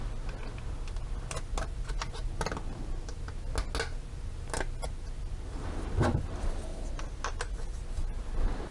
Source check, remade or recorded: recorded